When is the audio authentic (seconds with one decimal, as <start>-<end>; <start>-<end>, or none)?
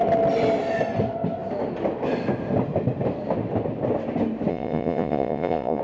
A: 0.0-4.5